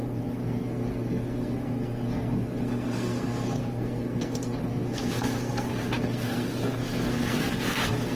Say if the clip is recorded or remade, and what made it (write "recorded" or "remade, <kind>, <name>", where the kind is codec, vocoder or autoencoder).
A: remade, codec, SNAC